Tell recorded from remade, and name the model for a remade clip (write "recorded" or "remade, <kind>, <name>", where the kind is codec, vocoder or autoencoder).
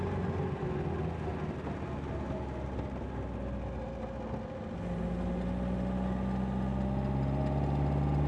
recorded